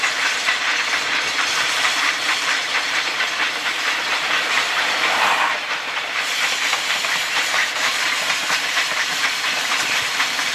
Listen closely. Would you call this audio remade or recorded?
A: remade